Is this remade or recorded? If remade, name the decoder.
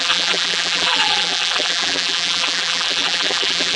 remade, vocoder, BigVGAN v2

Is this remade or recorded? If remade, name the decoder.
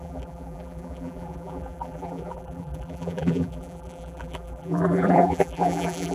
remade, vocoder, BigVGAN v2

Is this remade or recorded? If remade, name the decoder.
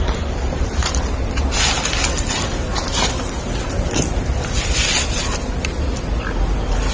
recorded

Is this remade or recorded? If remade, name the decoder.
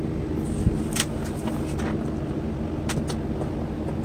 recorded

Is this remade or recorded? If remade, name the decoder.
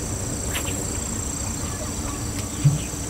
recorded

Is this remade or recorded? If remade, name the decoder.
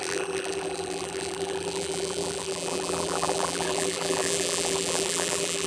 remade, vocoder, BigVGAN v2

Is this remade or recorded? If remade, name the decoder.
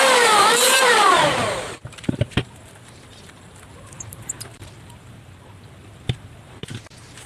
remade, vocoder, BigVGAN v2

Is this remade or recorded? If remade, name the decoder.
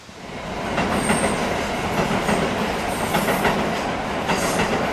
recorded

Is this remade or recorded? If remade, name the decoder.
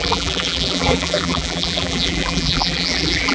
remade, vocoder, BigVGAN v2